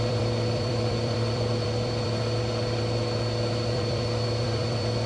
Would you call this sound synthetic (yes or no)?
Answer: yes